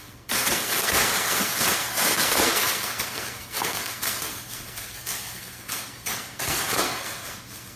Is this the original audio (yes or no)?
no